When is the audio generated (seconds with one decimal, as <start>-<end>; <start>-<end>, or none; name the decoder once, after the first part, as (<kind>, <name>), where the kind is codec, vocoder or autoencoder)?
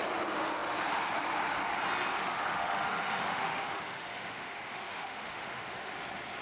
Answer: 2.1-5.9 (autoencoder, DAC-VAE)